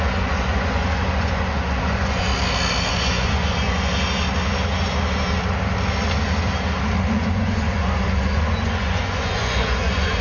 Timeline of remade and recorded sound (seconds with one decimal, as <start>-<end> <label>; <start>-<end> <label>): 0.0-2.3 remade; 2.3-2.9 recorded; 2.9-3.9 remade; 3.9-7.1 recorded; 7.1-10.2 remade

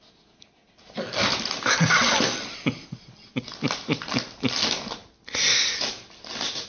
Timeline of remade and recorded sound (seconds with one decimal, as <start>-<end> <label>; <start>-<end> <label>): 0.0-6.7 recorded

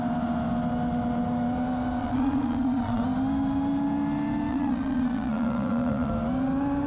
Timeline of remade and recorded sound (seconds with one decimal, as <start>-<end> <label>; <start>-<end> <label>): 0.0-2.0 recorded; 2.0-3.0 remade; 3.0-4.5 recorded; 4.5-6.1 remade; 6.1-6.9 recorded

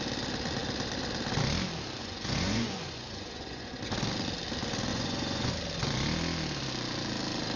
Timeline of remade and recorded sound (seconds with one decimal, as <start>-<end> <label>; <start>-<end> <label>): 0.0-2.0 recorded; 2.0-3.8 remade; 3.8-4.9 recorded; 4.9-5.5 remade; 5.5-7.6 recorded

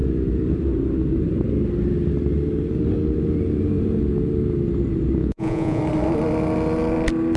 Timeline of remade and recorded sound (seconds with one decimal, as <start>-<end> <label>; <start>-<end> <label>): 0.0-5.2 recorded; 5.2-5.8 remade; 5.8-7.4 recorded

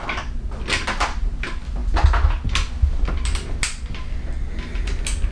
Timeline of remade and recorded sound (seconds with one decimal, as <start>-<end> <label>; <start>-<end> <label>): 0.0-5.3 recorded

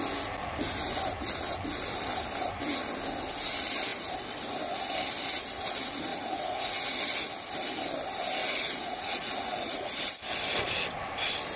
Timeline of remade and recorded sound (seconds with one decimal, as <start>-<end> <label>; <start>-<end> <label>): 0.0-6.1 recorded; 6.1-7.0 remade; 7.0-8.4 recorded; 8.4-10.0 remade; 10.0-11.6 recorded

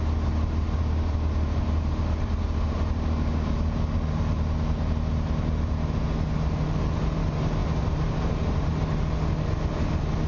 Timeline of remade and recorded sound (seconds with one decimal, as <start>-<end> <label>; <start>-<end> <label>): 0.0-10.3 recorded